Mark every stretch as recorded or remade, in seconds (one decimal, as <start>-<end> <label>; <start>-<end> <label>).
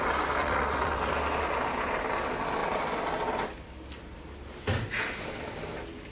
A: 0.0-0.4 recorded; 0.4-1.1 remade; 1.1-6.1 recorded